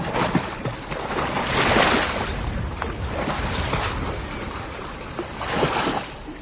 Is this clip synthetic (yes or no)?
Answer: no